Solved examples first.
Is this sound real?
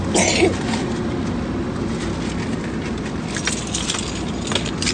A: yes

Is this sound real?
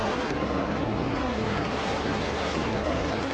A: no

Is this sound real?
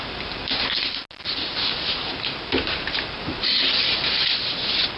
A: yes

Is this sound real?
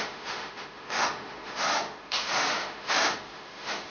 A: no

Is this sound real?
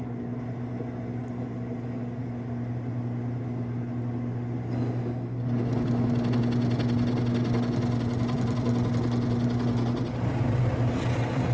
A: yes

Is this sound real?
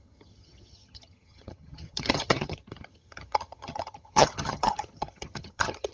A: no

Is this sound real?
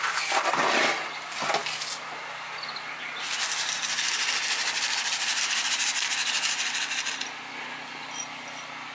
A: yes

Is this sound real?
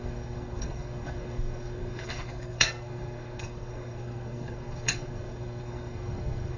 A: no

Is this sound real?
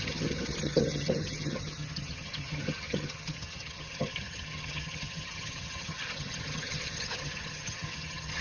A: no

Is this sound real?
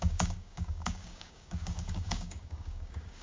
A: no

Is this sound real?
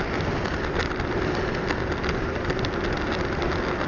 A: yes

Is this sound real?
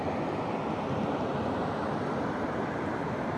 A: yes